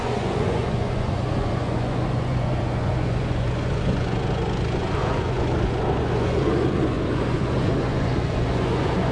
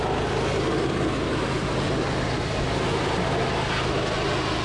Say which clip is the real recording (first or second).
second